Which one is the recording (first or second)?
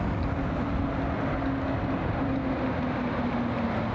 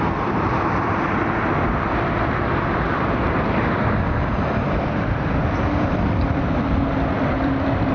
first